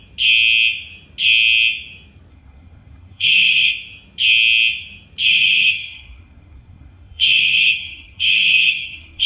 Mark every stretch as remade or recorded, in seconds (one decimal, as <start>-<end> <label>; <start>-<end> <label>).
0.0-2.3 recorded; 2.3-3.7 remade; 3.7-5.3 recorded; 5.3-9.3 remade